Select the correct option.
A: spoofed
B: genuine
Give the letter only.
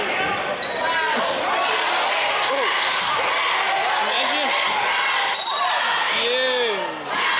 B